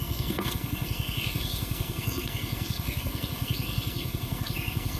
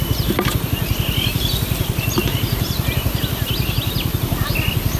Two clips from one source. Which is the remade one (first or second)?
first